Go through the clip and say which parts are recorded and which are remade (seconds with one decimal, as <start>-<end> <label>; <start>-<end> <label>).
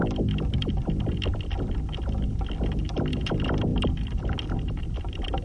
0.0-5.4 recorded